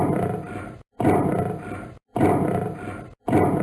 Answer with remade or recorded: recorded